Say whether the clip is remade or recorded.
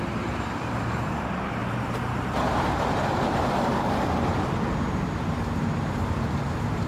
remade